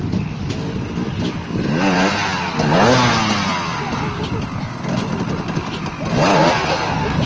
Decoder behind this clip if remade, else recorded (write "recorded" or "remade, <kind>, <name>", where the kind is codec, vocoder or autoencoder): recorded